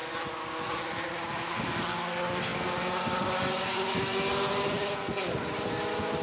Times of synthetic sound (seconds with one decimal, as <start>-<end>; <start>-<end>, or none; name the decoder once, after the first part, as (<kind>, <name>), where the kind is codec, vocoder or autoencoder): none